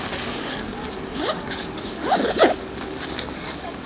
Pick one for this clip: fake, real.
fake